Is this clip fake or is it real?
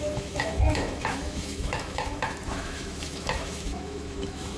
fake